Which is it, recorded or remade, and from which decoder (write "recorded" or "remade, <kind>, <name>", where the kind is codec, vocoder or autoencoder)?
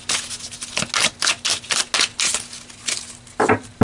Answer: recorded